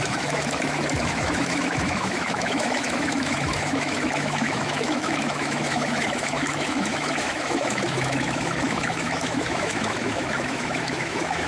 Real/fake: fake